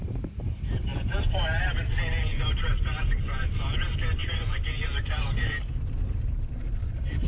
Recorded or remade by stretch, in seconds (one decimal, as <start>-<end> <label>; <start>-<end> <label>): 0.0-7.3 remade